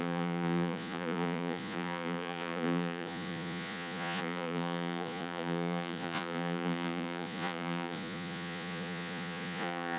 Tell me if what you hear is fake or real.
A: fake